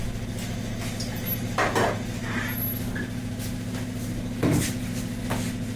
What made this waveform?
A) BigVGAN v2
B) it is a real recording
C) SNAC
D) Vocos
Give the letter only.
B